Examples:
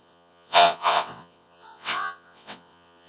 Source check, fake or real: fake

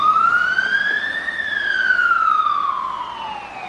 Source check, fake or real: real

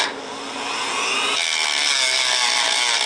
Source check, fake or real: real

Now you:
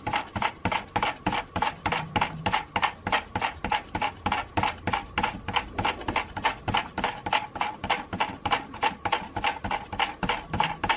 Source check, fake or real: real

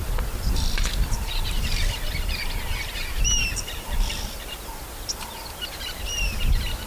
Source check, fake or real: fake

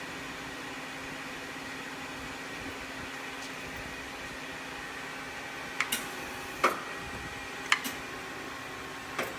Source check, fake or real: real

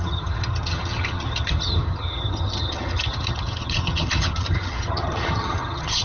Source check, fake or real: fake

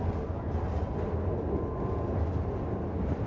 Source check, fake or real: real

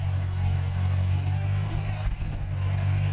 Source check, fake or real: fake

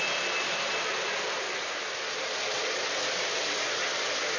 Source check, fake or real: real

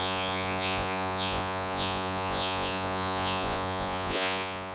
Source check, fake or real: fake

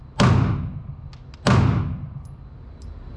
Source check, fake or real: real